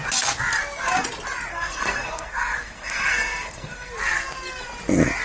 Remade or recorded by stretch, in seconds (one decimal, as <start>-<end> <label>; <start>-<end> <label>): 0.0-1.5 recorded; 1.5-3.9 remade; 3.9-5.2 recorded